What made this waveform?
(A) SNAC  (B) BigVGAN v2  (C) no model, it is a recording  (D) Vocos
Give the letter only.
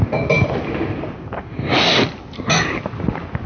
C